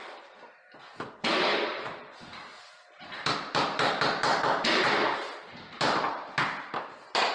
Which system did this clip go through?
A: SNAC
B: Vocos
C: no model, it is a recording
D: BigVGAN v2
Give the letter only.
C